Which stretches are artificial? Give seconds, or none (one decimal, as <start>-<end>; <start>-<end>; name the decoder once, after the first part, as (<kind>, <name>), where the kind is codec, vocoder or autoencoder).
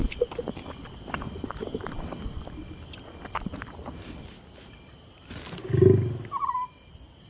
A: none